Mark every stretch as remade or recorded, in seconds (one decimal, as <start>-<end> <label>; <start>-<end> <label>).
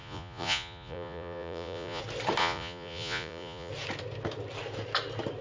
0.0-2.0 remade; 2.0-2.4 recorded; 2.4-3.7 remade; 3.7-5.4 recorded